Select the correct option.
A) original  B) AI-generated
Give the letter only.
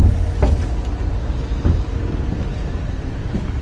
A